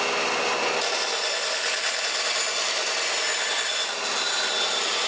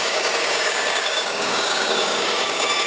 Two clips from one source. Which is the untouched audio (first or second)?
first